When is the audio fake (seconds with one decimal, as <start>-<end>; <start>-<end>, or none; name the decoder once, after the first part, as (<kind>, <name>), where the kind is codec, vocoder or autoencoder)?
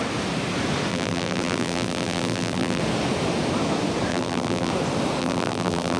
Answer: 0.9-2.8 (vocoder, BigVGAN v2); 4.1-4.7; 5.2-6.0